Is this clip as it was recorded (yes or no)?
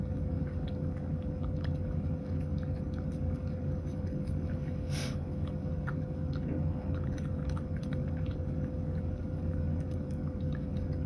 no